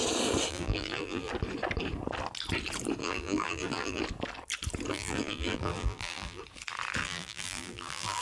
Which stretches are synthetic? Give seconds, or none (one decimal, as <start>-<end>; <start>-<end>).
0.5-1.3; 3.0-4.0; 4.9-6.4; 7.0-8.2